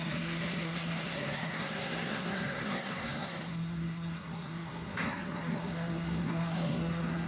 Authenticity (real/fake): fake